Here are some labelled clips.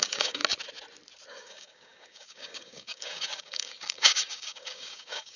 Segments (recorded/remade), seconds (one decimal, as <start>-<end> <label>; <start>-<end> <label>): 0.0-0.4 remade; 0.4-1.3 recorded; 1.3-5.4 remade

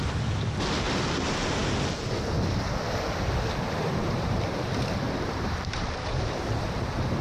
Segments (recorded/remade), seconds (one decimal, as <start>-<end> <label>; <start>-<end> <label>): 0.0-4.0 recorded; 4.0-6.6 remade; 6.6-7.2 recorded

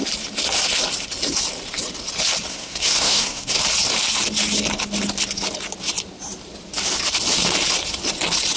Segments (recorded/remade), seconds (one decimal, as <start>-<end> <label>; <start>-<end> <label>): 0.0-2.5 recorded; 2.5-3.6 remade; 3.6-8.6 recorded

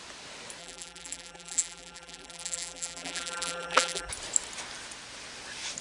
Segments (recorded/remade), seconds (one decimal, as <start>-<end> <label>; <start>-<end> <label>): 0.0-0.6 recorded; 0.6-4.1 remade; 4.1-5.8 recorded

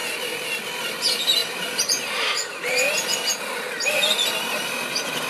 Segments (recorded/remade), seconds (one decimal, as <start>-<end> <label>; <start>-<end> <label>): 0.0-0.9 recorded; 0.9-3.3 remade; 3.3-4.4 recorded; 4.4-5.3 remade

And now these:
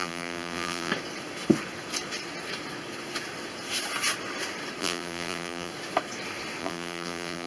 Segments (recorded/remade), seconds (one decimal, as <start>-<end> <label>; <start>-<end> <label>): 0.0-0.9 remade; 0.9-4.8 recorded; 4.8-5.7 remade; 5.7-6.6 recorded; 6.6-7.5 remade

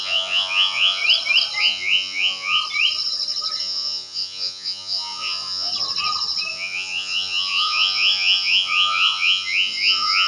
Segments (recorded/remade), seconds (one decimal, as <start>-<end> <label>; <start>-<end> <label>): 0.0-1.0 remade; 1.0-1.6 recorded; 1.6-2.6 remade; 2.6-3.6 recorded; 3.6-5.7 remade; 5.7-6.5 recorded; 6.5-10.3 remade